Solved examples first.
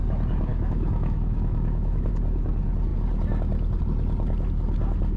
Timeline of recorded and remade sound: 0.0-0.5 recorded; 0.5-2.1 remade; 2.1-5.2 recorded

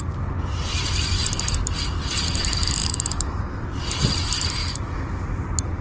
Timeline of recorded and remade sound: 0.0-2.8 recorded; 2.8-3.4 remade; 3.4-4.6 recorded; 4.6-5.2 remade; 5.2-5.8 recorded